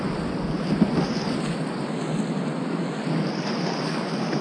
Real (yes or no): yes